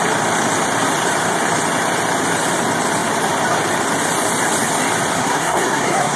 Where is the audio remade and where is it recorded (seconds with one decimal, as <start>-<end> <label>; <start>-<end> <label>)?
0.0-5.2 recorded; 5.2-6.2 remade